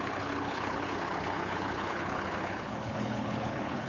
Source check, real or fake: fake